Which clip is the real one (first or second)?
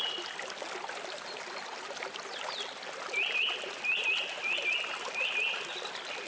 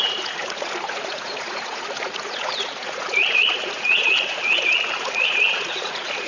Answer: first